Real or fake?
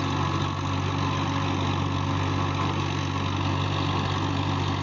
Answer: real